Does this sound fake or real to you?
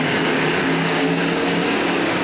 fake